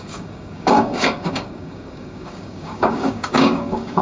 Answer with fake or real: fake